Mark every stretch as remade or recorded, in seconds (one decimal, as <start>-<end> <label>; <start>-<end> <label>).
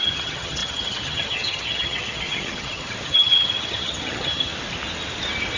0.0-4.5 remade; 4.5-5.6 recorded